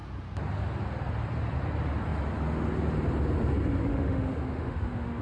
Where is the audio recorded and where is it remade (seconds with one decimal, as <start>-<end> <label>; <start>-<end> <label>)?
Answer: 0.0-3.9 recorded; 3.9-5.2 remade